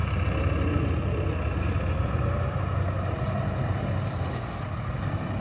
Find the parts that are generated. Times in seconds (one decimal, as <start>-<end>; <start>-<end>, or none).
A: none